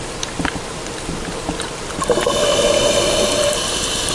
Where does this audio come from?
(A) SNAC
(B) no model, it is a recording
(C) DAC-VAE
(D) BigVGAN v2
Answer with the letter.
B